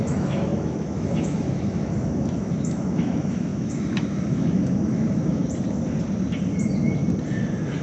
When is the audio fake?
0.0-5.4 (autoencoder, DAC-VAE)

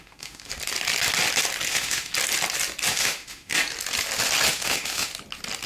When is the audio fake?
0.0-0.5 (autoencoder, DAC-VAE); 1.7-2.1; 2.9-3.5; 4.5-5.1

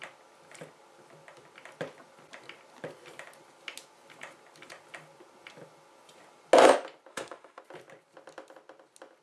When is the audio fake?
7.1-7.6 (autoencoder, DAC-VAE)